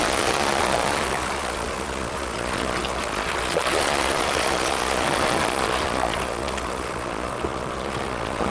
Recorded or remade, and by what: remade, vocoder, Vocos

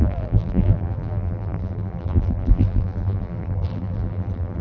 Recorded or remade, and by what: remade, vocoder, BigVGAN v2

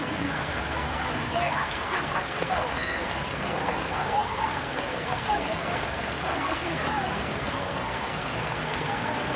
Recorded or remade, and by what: remade, codec, SNAC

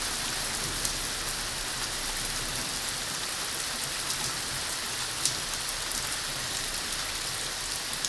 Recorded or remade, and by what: recorded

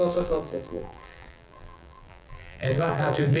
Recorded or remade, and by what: remade, vocoder, BigVGAN v2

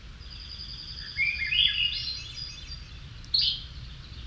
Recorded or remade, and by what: recorded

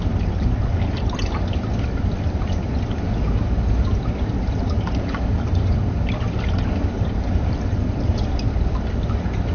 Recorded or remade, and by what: remade, vocoder, BigVGAN v2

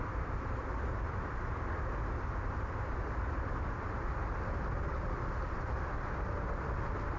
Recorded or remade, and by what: recorded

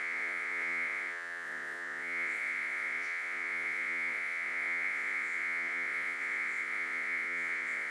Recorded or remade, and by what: remade, vocoder, Vocos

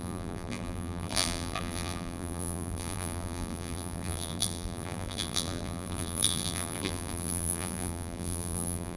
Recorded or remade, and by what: remade, vocoder, BigVGAN v2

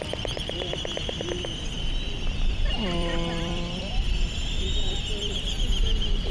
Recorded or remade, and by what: remade, vocoder, BigVGAN v2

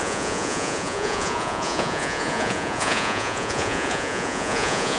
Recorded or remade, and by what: remade, vocoder, Vocos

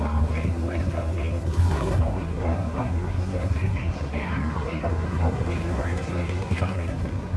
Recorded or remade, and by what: remade, codec, SNAC